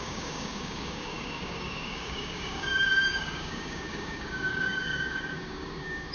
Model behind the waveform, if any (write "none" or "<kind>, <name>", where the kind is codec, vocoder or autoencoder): codec, DAC